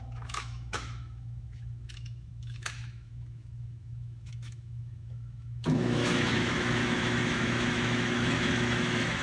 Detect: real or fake fake